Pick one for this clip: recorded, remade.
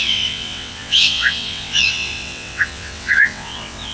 remade